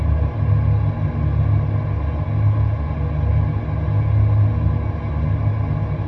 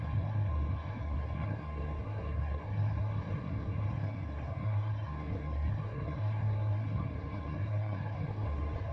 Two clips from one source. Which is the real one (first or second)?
first